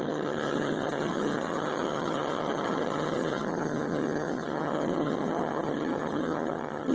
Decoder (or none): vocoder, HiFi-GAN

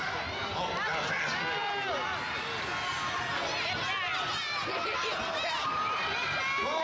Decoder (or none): none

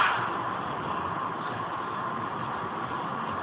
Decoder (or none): none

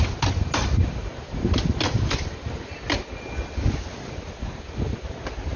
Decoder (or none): none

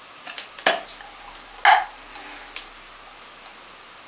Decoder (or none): none